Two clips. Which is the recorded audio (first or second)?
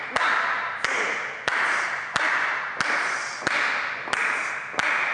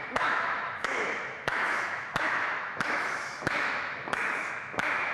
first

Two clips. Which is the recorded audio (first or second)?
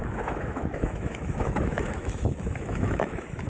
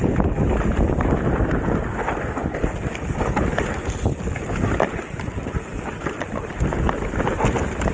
second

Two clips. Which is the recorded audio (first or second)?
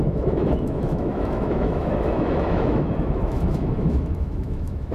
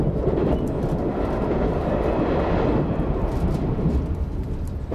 second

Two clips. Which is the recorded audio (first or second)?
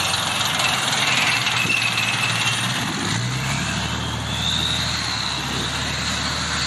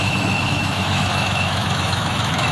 first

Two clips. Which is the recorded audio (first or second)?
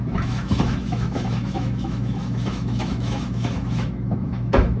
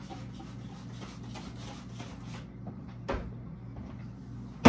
second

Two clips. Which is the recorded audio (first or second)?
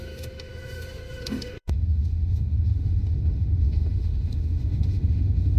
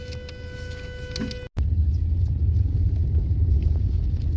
second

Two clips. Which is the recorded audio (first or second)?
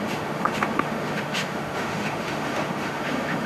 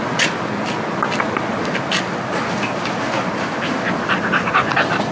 second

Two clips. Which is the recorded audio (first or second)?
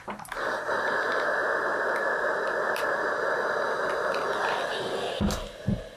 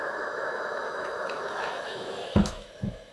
first